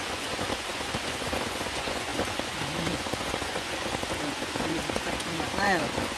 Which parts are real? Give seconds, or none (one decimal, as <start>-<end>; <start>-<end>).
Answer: none